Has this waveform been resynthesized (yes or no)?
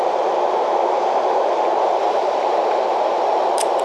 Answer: yes